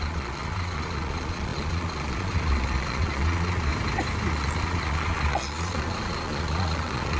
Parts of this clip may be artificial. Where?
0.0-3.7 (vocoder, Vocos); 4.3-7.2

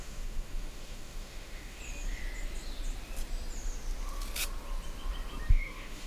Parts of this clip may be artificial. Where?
0.0-1.8 (autoencoder, DAC-VAE); 5.5-6.1

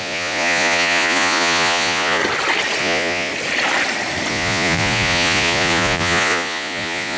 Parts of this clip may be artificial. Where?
0.0-2.2 (vocoder, Vocos); 2.8-3.3; 4.3-7.2

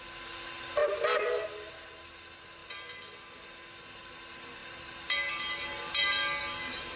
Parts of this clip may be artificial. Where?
none